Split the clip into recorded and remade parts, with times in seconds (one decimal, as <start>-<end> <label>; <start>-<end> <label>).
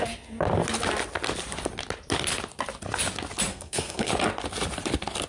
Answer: 0.0-3.5 recorded; 3.5-4.1 remade; 4.1-5.3 recorded